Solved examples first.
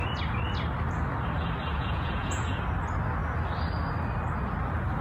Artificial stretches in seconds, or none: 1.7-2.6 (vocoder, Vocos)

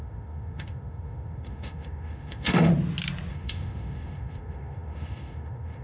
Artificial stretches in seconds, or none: 0.0-2.7 (autoencoder, DAC-VAE); 3.3-5.8

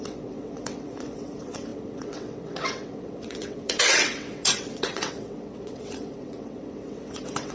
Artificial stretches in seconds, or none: 0.0-7.5 (vocoder, WaveNeXt)

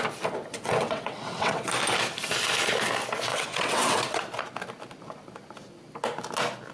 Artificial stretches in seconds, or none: 0.5-1.7 (vocoder, WaveNeXt); 3.3-4.2